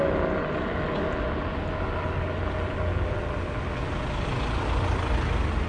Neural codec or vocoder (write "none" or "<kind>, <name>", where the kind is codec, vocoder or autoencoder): none